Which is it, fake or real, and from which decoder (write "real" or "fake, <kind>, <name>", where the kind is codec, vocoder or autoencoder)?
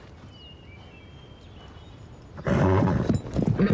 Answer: real